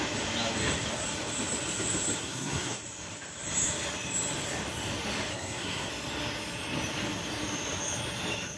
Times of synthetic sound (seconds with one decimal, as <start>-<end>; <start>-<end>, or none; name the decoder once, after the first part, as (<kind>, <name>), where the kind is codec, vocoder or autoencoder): 2.2-2.8 (codec, SNAC); 5.3-5.9